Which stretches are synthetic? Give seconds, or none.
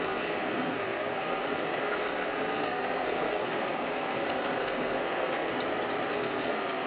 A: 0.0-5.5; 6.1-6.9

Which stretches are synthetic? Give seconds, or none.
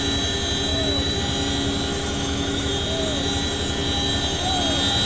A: 0.7-1.2; 1.9-2.7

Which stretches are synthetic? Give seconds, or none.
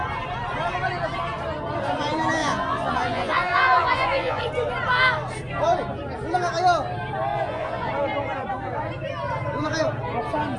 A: 2.4-4.4; 7.3-7.9